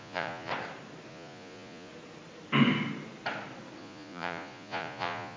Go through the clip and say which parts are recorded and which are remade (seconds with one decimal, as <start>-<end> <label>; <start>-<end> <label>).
0.0-0.5 remade; 0.5-1.1 recorded; 1.1-1.9 remade; 1.9-3.8 recorded; 3.8-5.4 remade